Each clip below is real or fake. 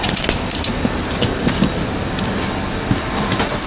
real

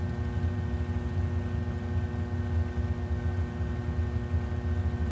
real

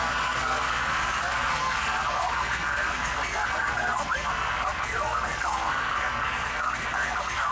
fake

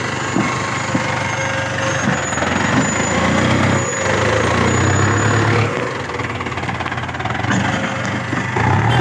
real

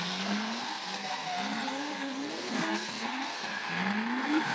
fake